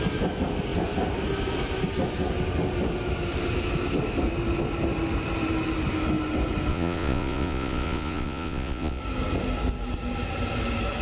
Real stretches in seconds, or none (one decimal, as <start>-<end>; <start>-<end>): 0.0-6.7; 9.0-11.0